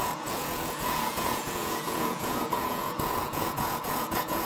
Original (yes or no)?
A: no